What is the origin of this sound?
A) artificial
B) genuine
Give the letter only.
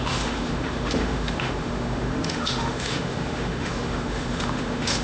A